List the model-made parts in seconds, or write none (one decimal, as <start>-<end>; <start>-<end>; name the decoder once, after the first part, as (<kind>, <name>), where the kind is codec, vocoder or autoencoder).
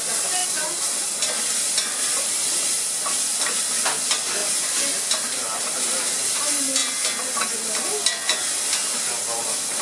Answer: 0.4-2.5 (vocoder, BigVGAN v2); 4.4-6.0